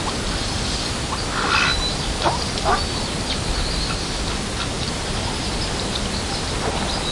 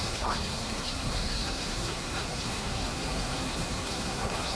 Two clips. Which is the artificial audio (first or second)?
second